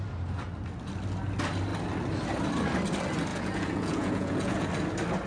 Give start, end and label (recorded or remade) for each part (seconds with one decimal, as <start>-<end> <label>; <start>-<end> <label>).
0.0-3.3 recorded; 3.3-4.7 remade; 4.7-5.3 recorded